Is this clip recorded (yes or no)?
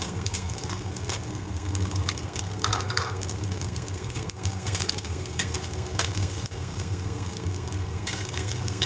no